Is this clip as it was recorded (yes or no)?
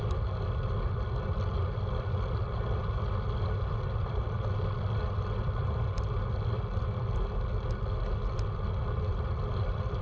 yes